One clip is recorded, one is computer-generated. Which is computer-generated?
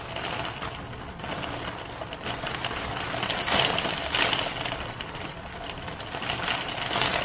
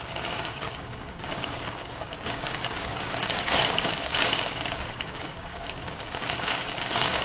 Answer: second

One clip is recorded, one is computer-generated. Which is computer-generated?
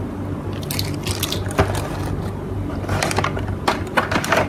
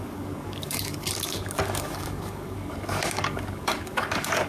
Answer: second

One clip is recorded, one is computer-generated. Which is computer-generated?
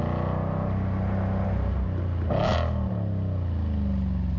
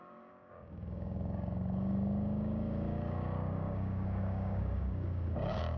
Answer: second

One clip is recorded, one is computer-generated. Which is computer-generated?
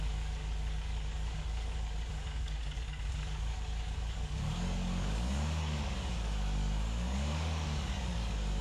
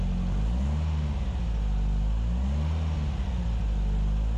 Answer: first